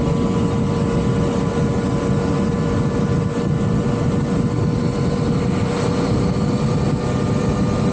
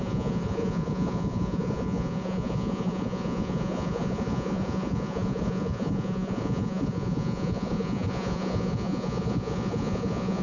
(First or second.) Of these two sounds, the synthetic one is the second